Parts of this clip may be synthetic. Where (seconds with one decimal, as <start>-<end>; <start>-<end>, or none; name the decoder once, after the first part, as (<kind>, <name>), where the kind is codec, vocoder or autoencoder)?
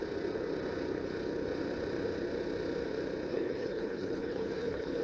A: 3.3-5.0 (codec, HILCodec)